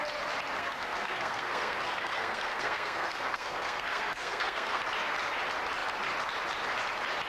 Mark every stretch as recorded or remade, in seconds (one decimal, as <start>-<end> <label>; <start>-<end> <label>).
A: 0.0-0.6 recorded; 0.6-4.8 remade; 4.8-7.3 recorded

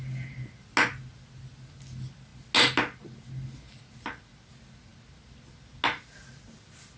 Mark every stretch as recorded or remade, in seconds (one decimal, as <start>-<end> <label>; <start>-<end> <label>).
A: 0.0-7.0 recorded

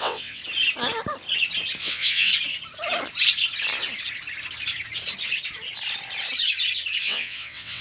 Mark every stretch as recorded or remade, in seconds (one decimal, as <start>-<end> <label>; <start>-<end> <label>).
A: 0.0-0.4 remade; 0.4-1.8 recorded; 1.8-2.3 remade; 2.3-7.0 recorded; 7.0-7.8 remade

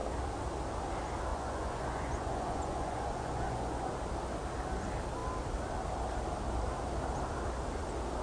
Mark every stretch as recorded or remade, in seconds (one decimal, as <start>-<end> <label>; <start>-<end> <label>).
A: 0.0-1.3 recorded; 1.3-3.9 remade; 3.9-8.2 recorded

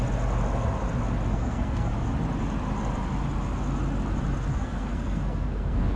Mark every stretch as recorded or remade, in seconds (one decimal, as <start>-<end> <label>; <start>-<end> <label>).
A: 0.0-1.3 recorded; 1.3-1.9 remade; 1.9-4.5 recorded; 4.5-6.0 remade

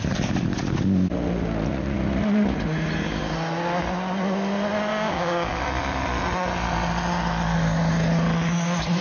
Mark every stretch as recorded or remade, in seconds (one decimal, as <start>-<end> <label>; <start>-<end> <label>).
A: 0.0-4.9 recorded; 4.9-5.5 remade; 5.5-9.0 recorded